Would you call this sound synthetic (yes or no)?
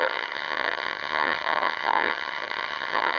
yes